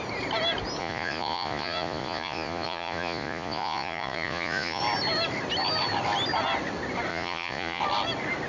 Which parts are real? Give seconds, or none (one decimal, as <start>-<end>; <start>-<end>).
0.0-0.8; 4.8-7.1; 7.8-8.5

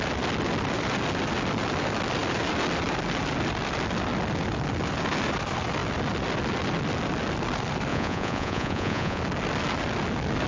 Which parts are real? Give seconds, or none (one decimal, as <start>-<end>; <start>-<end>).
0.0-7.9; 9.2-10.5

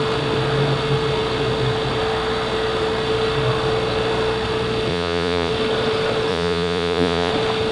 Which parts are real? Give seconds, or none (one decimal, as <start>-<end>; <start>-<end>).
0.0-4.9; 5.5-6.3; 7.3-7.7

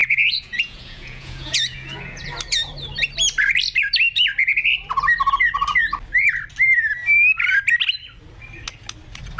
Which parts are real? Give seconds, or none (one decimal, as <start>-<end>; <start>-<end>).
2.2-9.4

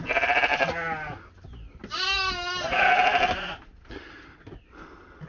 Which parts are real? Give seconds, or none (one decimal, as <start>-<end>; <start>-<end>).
0.0-5.3

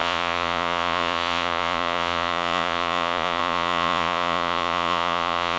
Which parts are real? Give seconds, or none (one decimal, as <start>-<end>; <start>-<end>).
none

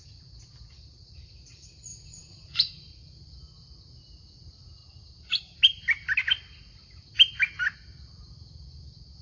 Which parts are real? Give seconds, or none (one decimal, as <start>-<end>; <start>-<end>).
0.0-1.9; 3.0-9.2

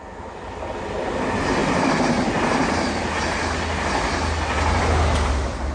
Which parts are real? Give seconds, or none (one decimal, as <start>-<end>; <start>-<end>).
0.0-5.7